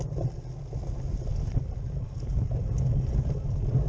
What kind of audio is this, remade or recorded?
recorded